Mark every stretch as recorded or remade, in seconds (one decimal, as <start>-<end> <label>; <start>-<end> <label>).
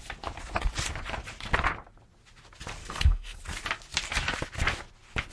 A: 0.0-2.8 recorded; 2.8-3.4 remade; 3.4-5.3 recorded